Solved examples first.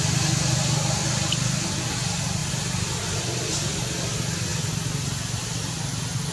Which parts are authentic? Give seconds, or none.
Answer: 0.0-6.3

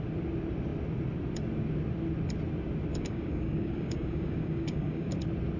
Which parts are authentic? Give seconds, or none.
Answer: 0.0-2.9; 5.1-5.6

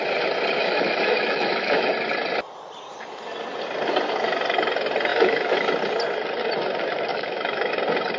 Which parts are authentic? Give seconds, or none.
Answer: 0.0-0.6; 1.9-5.1; 5.7-7.1; 7.7-8.2

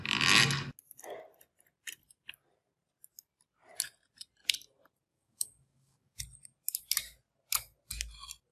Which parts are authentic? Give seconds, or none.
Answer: 0.0-5.1; 6.2-8.5

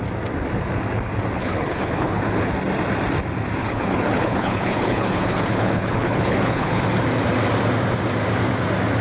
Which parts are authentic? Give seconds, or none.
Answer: 0.0-1.4; 2.5-3.6; 6.9-9.0

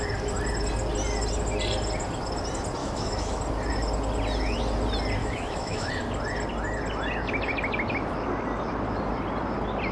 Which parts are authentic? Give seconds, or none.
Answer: 0.0-2.8; 3.4-5.2; 5.9-9.9